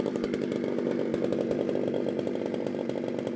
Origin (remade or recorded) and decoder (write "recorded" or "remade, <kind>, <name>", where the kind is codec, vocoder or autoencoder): recorded